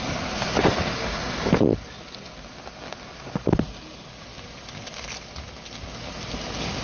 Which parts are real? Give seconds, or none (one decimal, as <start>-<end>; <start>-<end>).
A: 0.0-6.8